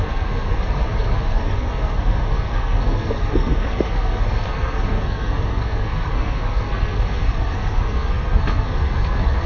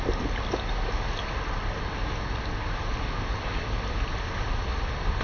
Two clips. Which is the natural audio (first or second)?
second